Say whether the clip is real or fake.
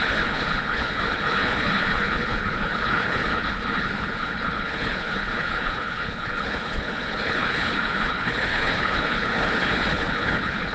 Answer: fake